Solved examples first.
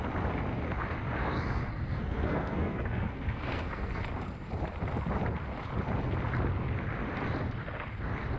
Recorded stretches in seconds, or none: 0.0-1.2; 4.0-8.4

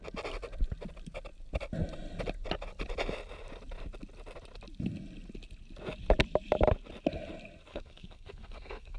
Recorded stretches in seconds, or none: 0.0-7.7

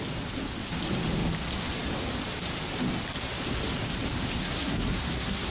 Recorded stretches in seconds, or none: 0.0-4.4

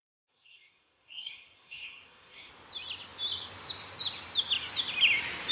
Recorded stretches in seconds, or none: 2.5-5.5

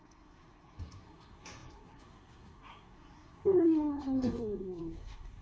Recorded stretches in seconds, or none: none

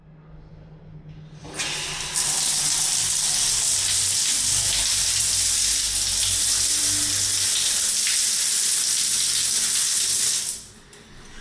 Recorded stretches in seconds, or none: 0.0-11.4

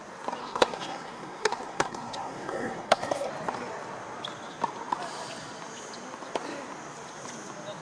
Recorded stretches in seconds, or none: 0.0-0.4; 3.3-7.8

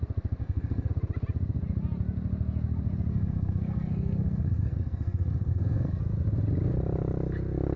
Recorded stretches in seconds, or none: 0.0-0.4; 0.9-3.1; 6.0-7.8